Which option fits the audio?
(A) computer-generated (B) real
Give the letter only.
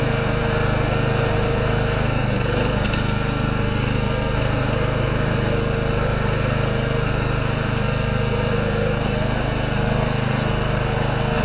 A